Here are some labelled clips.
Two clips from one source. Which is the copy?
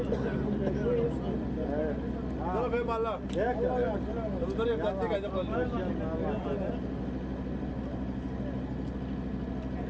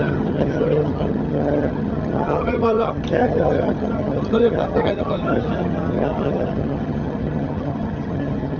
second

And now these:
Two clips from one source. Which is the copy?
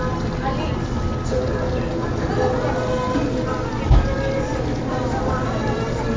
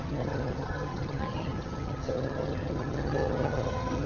second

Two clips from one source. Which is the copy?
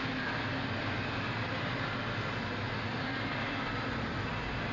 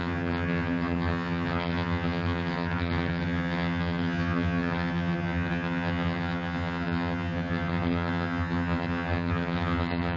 second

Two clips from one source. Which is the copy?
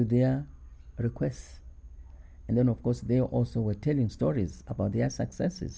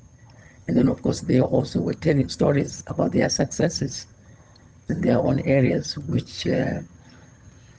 second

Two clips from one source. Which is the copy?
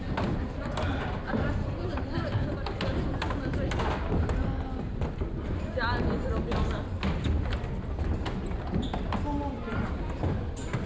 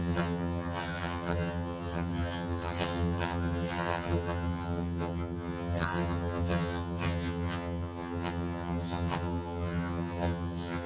second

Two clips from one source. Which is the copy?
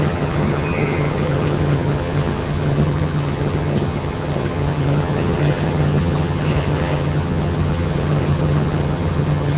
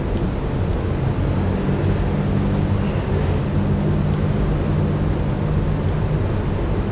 first